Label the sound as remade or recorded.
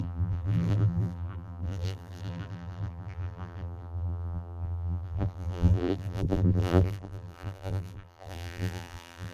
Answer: remade